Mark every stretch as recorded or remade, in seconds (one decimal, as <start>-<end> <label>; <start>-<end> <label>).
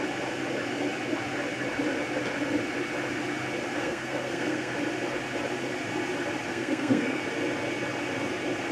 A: 0.0-3.8 recorded; 3.8-4.7 remade; 4.7-6.5 recorded; 6.5-7.2 remade; 7.2-8.7 recorded